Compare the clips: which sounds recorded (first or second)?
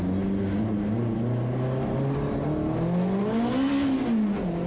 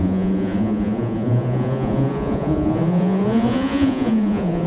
first